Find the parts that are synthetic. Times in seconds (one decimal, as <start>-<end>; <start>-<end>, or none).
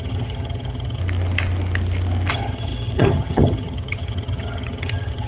0.0-1.0; 2.3-5.3